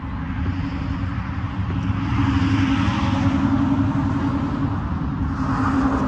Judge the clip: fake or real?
real